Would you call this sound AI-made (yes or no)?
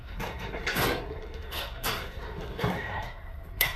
yes